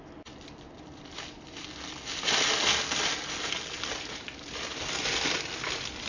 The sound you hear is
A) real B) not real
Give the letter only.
A